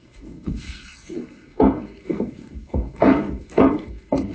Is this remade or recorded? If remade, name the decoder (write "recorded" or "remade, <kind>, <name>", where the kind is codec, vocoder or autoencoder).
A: remade, codec, SNAC